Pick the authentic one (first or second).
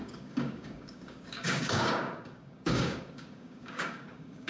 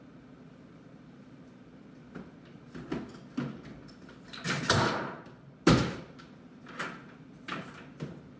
second